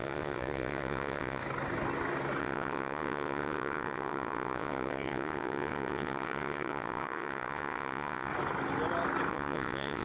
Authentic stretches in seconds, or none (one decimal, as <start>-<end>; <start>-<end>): 1.4-2.4; 8.3-9.3